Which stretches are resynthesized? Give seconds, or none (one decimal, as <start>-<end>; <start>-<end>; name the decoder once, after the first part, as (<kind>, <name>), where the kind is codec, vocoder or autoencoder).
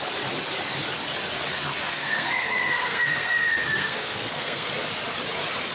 1.8-4.7 (codec, SNAC)